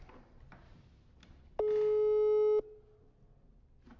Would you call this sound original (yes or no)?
yes